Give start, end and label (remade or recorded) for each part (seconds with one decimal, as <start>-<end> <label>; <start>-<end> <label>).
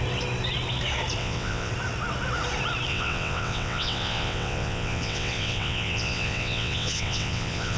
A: 0.0-1.2 recorded; 1.2-1.7 remade; 1.7-2.9 recorded; 2.9-7.8 remade